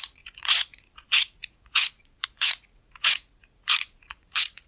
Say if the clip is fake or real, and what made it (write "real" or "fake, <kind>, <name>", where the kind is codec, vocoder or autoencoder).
fake, vocoder, Vocos